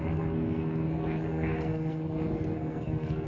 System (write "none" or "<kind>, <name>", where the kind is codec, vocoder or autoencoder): codec, SNAC